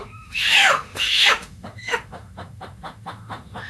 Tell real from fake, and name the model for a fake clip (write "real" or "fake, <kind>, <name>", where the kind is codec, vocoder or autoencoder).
fake, autoencoder, DAC-VAE